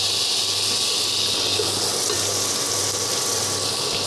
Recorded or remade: recorded